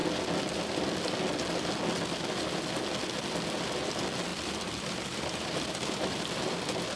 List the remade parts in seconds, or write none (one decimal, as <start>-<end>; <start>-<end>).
4.3-7.0

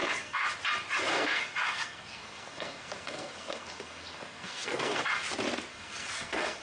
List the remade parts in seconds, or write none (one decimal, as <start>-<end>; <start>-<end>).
0.0-0.5; 1.1-5.1; 5.7-6.6